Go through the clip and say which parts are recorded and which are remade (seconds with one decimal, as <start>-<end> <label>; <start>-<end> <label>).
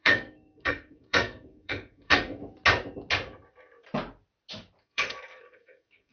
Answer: 0.0-2.4 remade; 2.4-4.8 recorded; 4.8-6.1 remade